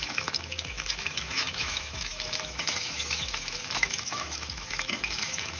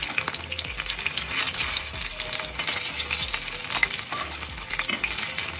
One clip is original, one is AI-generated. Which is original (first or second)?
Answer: second